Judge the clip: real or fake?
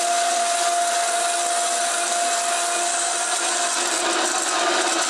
real